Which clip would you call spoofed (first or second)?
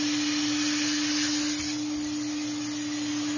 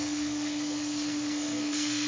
second